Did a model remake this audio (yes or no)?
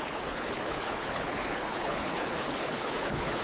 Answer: yes